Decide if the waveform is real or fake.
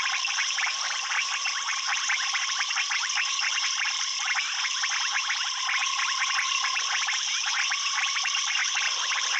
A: fake